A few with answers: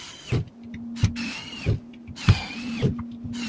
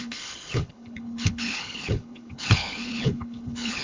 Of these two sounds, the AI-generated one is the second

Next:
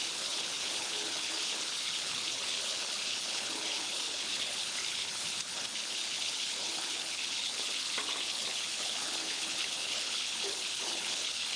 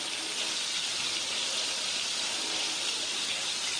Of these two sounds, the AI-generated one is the first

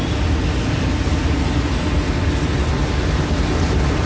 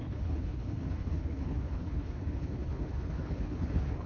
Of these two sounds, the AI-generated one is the second